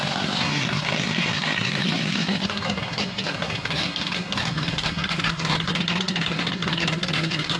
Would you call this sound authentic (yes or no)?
no